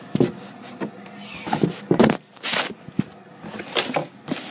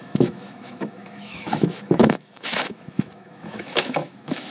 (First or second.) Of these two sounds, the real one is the first